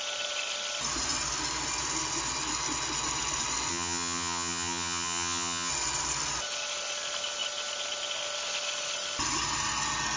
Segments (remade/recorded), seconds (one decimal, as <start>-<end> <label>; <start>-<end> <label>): 0.0-3.7 recorded; 3.7-5.7 remade; 5.7-10.2 recorded